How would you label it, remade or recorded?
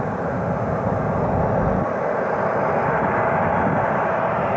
recorded